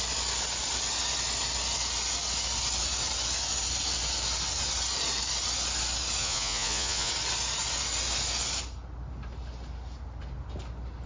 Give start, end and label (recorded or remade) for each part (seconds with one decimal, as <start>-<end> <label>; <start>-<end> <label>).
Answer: 0.0-6.2 recorded; 6.2-7.1 remade; 7.1-11.1 recorded